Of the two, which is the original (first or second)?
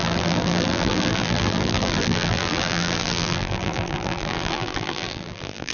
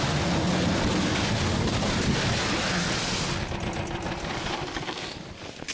second